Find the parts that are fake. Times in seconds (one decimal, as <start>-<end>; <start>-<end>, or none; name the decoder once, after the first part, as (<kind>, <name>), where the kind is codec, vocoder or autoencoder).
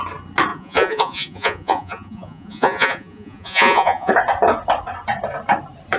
0.5-4.1 (vocoder, Vocos)